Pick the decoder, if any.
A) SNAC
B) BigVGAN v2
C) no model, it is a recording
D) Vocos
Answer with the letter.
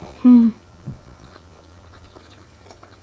D